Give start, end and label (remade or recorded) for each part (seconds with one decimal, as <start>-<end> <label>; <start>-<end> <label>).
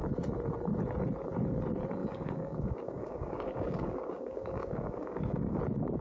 0.0-2.0 recorded; 2.0-5.6 remade; 5.6-6.0 recorded